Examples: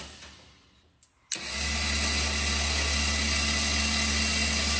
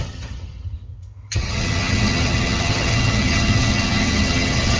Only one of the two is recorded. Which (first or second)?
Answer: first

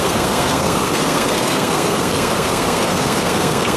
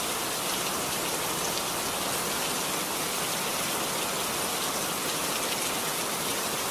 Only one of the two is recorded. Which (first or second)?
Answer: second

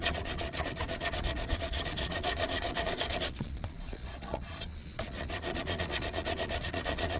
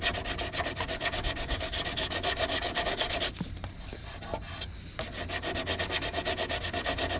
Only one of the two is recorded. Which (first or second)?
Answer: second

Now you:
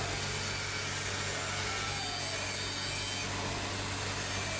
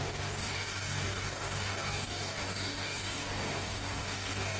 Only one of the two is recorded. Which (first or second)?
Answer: first